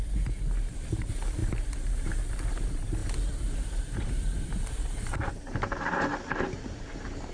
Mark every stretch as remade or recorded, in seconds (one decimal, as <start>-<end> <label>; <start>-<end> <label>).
0.0-7.3 remade